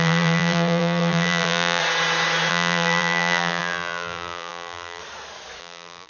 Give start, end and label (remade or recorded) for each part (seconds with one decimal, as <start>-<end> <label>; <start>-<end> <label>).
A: 0.0-1.8 remade; 1.8-2.5 recorded; 2.5-5.0 remade; 5.0-5.6 recorded; 5.6-6.1 remade